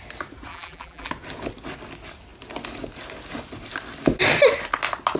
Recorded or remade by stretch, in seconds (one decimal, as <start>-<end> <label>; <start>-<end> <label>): 0.0-0.5 recorded; 0.5-1.1 remade; 1.1-5.2 recorded